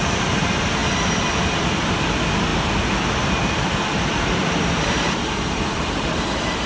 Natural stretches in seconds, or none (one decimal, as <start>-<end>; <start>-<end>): 0.0-2.5